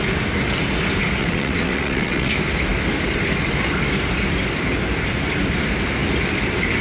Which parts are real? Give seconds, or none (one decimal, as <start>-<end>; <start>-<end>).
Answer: 0.0-1.2; 2.3-6.8